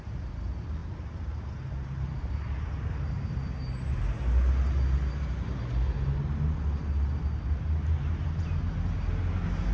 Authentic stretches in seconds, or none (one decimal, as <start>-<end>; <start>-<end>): 0.0-9.7